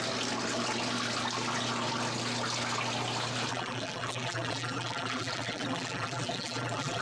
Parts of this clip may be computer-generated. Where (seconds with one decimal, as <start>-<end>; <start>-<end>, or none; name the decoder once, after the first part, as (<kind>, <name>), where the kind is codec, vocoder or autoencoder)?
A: 3.5-7.0 (vocoder, BigVGAN v2)